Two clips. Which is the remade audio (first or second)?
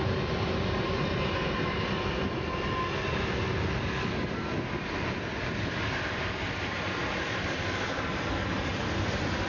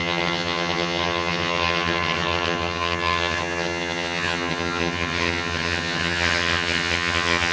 second